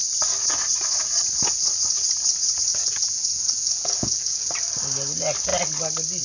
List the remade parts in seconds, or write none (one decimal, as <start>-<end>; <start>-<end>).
2.7-4.5